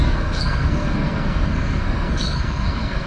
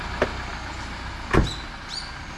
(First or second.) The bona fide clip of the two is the second